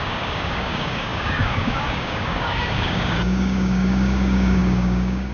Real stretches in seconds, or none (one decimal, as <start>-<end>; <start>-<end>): none